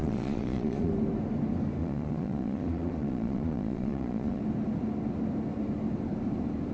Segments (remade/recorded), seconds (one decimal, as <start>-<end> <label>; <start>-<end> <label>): 0.0-0.9 remade; 0.9-1.8 recorded; 1.8-4.4 remade; 4.4-6.7 recorded